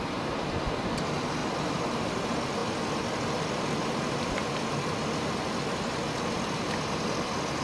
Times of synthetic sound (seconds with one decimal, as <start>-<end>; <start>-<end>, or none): none